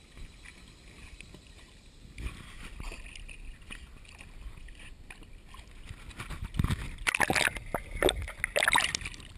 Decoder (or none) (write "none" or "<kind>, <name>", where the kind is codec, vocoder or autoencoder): none